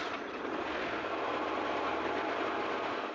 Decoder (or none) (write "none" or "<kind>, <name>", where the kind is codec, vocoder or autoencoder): none